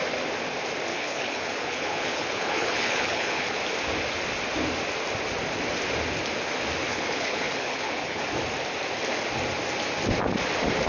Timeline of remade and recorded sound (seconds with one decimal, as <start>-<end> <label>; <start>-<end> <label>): 0.0-0.9 recorded; 0.9-3.6 remade; 3.6-6.9 recorded; 6.9-8.2 remade; 8.2-10.9 recorded